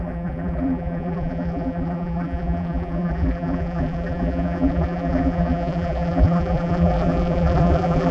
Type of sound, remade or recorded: remade